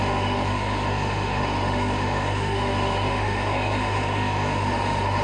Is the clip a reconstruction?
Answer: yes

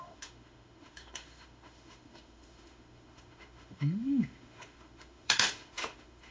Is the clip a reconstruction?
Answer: yes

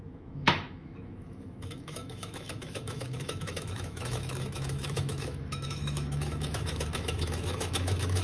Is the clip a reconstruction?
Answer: yes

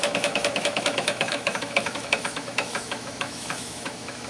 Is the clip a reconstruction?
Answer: yes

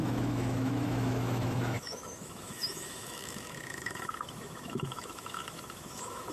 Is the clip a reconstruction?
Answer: yes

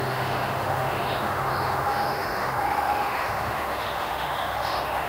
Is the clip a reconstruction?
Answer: yes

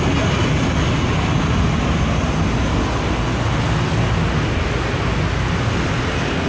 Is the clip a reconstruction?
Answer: no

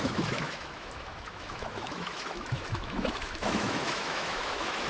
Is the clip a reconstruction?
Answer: yes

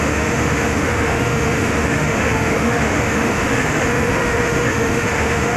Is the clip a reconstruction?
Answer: yes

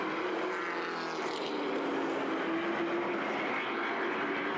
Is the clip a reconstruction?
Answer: no